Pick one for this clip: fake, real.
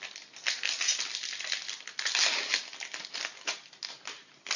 real